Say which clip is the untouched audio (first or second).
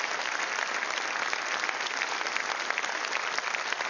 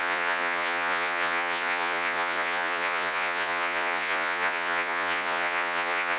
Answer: first